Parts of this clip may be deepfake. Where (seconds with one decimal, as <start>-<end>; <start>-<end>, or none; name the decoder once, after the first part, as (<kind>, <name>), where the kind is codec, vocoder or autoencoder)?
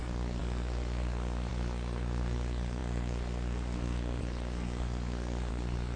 0.0-6.0 (codec, SNAC)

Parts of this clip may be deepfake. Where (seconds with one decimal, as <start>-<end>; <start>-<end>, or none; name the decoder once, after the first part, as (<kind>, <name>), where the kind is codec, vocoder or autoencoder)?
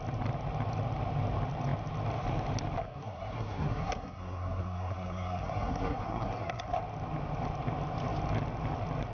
2.8-6.8 (codec, SNAC)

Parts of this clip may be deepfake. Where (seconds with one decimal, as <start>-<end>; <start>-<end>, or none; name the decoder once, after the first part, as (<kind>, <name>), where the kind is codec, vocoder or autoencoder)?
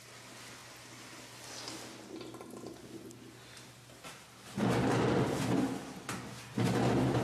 none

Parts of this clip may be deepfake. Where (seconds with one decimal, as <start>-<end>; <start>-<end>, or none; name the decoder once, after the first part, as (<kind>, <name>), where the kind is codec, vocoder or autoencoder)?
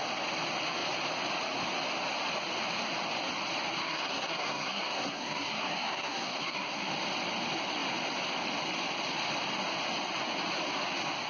3.8-6.9 (codec, SNAC)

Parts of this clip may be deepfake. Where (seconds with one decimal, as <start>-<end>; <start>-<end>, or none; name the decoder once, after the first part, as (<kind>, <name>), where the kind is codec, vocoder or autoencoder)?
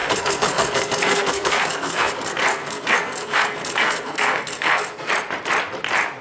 0.0-2.1 (codec, SNAC); 2.5-5.1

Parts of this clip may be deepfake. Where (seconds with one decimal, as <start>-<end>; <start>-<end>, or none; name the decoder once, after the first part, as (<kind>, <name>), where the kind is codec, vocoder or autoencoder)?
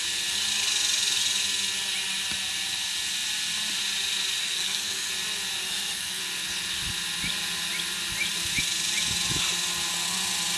4.4-5.1 (codec, SNAC); 5.6-6.2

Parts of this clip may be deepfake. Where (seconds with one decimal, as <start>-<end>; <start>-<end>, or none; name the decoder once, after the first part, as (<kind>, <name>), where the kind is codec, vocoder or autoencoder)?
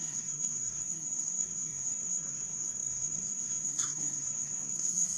0.0-5.2 (codec, SNAC)